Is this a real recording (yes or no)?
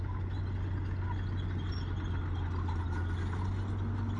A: yes